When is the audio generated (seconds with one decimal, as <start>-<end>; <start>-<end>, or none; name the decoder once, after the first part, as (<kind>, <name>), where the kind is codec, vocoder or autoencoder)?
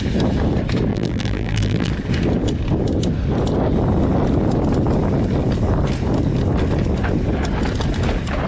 0.9-1.9 (vocoder, BigVGAN v2)